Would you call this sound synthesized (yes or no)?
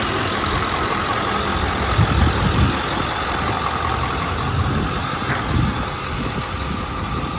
no